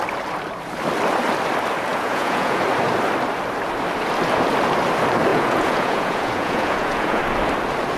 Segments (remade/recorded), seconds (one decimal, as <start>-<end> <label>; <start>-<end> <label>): 0.0-1.9 recorded; 1.9-2.6 remade; 2.6-5.3 recorded; 5.3-7.2 remade; 7.2-8.0 recorded